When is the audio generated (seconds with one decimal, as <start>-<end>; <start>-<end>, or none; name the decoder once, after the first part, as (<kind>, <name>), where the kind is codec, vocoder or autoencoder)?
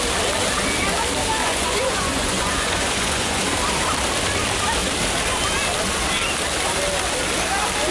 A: 1.4-3.4 (vocoder, Vocos)